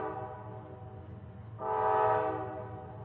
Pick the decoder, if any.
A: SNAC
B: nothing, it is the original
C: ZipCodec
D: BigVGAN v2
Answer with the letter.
B